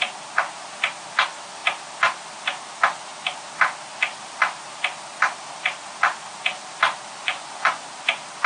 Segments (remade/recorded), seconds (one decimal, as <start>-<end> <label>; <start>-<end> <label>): 0.0-7.2 recorded; 7.2-7.8 remade; 7.8-8.5 recorded